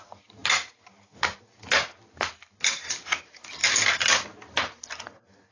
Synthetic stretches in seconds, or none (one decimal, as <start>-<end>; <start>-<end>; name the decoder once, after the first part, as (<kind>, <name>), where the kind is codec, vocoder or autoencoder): none